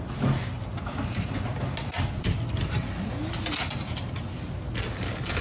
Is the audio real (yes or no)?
yes